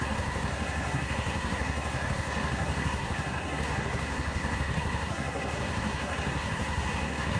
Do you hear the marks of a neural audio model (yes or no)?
yes